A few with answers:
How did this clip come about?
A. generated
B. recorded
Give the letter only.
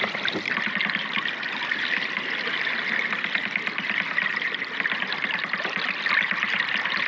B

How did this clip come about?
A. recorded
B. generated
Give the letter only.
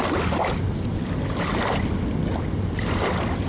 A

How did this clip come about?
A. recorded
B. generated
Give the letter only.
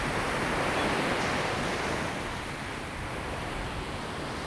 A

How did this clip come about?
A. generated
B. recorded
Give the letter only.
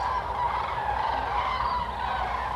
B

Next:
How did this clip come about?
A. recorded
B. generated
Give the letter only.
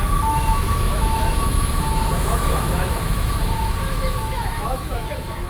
B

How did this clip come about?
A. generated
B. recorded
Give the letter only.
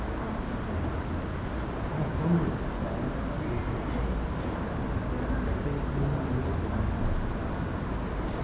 B